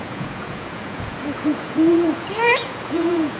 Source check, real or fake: fake